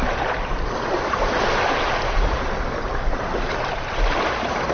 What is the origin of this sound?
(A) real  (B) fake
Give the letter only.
A